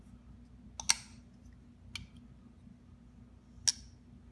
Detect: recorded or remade recorded